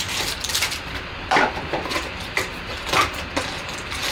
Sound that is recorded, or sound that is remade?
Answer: recorded